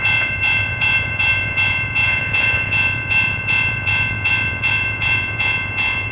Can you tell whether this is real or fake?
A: fake